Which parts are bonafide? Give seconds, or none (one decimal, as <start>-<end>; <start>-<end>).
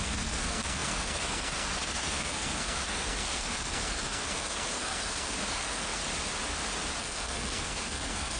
6.0-7.0